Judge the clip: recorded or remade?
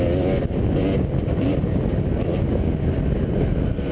recorded